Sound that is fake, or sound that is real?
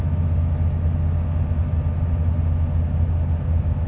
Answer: real